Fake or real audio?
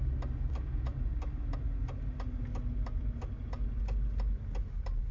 real